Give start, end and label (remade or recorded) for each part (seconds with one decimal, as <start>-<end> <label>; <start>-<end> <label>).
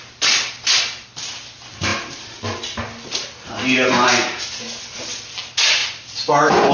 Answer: 0.0-1.9 recorded; 1.9-2.8 remade; 2.8-5.8 recorded; 5.8-6.7 remade